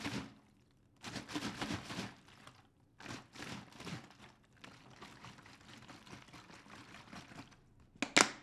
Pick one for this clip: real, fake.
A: real